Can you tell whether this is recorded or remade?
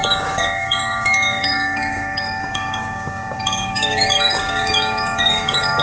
remade